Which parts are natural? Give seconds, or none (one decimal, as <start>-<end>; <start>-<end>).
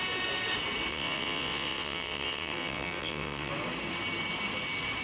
0.0-0.9; 3.5-5.0